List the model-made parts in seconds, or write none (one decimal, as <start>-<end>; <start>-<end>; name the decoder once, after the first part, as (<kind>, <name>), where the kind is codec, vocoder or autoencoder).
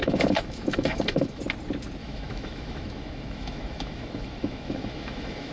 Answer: 0.0-1.4 (autoencoder, DAC-VAE); 2.0-5.5